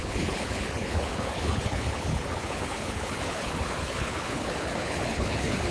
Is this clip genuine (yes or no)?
no